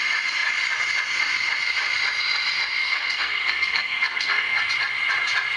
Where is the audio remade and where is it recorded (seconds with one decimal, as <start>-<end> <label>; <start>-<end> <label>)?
0.0-2.8 recorded; 2.8-4.6 remade; 4.6-5.6 recorded